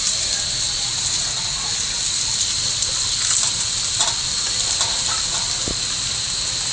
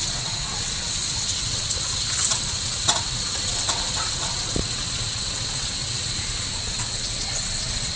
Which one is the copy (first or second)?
second